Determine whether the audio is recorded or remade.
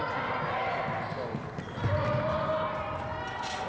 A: recorded